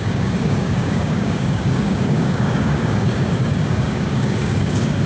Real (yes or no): no